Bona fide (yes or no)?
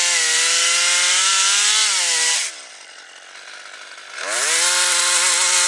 yes